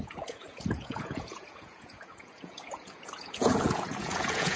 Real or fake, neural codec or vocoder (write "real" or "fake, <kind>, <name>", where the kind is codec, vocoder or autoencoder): fake, vocoder, Vocos